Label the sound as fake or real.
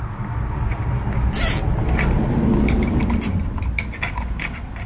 real